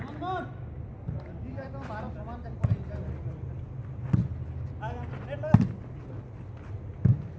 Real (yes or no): yes